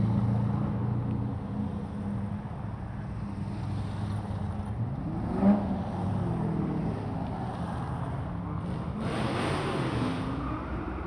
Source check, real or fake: real